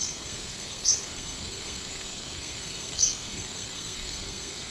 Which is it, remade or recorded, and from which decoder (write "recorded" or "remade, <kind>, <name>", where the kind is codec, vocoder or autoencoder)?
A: remade, codec, SNAC